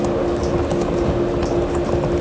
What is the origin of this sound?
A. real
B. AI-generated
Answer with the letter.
A